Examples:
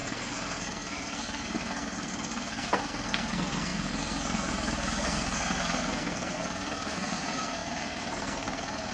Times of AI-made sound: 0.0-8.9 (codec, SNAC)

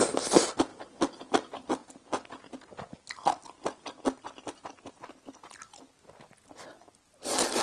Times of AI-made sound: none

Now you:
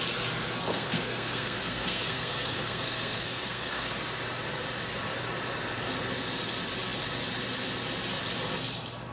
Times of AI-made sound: 0.7-3.9 (codec, SNAC)